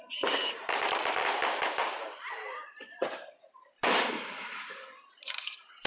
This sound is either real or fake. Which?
fake